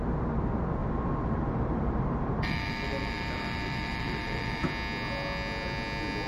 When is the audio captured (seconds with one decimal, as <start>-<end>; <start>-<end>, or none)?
0.0-0.8; 4.6-6.3